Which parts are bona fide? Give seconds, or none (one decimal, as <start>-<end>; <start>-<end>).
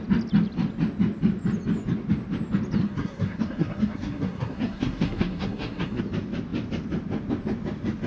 0.0-2.8; 6.0-8.1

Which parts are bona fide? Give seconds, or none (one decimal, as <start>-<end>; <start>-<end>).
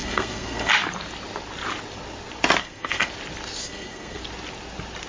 0.7-2.6; 3.1-3.6; 4.2-5.1